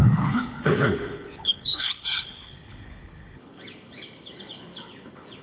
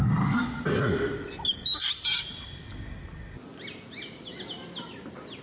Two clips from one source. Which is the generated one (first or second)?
first